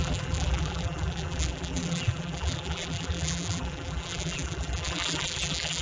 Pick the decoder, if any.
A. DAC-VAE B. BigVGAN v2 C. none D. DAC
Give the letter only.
B